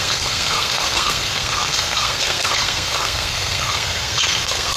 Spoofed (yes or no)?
yes